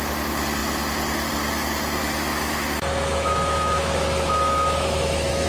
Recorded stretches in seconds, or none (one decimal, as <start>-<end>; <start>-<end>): 0.0-2.0